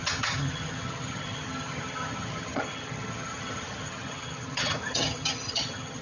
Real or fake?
fake